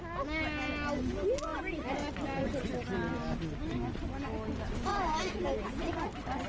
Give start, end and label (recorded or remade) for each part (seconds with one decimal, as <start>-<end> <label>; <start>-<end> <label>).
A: 0.0-4.9 recorded; 4.9-5.9 remade; 5.9-6.5 recorded